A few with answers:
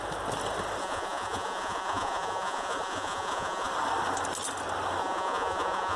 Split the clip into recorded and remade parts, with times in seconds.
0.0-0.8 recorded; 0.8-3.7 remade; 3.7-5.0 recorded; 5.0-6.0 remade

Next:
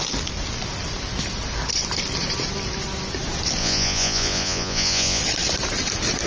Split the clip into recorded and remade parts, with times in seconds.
0.0-3.6 recorded; 3.6-5.2 remade; 5.2-6.3 recorded

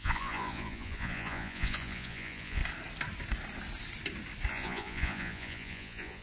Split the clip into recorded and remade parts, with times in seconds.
0.0-2.6 remade; 2.6-4.5 recorded; 4.5-6.2 remade